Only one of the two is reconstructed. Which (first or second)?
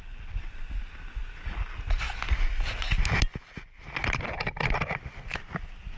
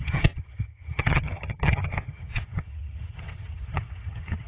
second